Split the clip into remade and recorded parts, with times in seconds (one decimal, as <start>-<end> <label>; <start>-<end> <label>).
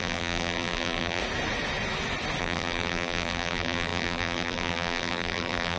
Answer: 0.0-1.2 remade; 1.2-2.4 recorded; 2.4-5.8 remade